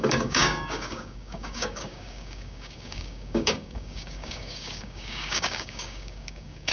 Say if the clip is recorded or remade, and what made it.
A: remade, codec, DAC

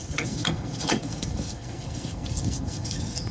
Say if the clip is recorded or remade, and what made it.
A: remade, codec, SNAC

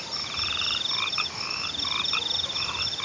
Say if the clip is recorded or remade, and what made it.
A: recorded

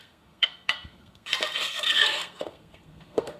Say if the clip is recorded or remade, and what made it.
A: remade, codec, SNAC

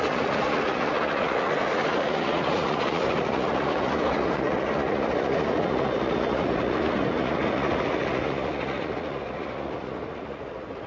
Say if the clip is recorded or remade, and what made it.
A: remade, vocoder, Vocos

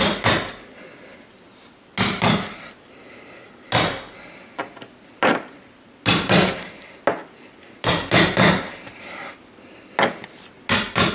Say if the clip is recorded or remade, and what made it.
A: recorded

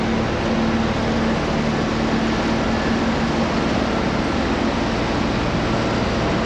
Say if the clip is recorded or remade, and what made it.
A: recorded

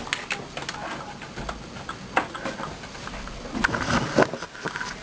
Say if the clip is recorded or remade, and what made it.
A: recorded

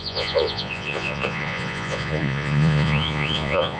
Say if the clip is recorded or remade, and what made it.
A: remade, vocoder, Vocos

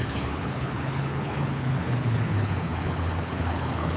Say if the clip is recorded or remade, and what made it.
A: remade, codec, HILCodec